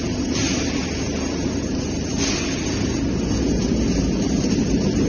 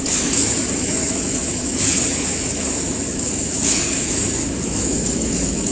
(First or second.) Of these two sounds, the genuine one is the first